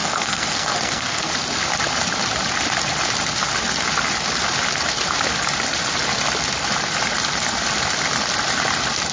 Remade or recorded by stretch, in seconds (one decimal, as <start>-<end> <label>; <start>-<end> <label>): 0.0-1.3 remade; 1.3-9.1 recorded